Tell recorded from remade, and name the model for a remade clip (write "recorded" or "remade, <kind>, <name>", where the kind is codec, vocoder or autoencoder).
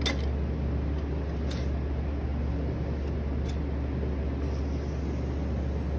recorded